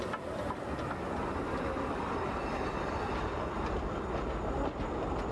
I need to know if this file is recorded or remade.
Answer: recorded